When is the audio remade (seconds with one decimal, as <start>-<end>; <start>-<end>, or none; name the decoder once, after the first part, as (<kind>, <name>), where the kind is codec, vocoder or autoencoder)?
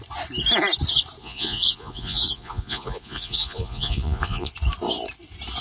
1.2-4.5 (vocoder, Vocos)